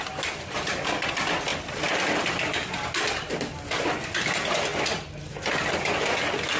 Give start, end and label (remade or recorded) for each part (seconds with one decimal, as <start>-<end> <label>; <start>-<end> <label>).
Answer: 0.0-6.6 remade